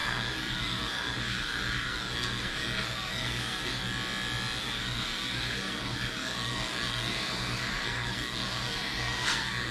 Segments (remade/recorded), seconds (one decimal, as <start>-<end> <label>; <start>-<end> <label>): 0.0-3.8 remade; 3.8-4.6 recorded; 4.6-9.7 remade